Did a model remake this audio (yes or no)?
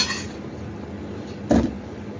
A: no